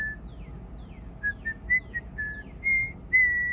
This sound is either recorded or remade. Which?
recorded